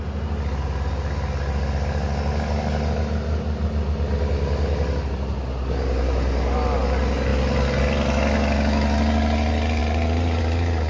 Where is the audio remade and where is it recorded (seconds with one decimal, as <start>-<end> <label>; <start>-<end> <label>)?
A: 0.0-10.9 recorded